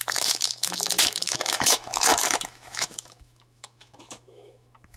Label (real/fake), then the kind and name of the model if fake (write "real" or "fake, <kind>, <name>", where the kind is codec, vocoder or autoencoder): fake, autoencoder, DAC-VAE